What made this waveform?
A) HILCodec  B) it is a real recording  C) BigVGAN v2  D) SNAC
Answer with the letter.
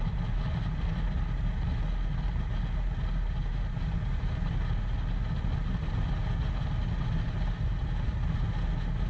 B